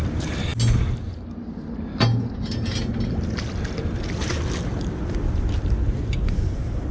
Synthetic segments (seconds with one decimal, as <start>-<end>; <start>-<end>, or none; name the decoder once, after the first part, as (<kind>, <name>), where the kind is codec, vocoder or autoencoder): none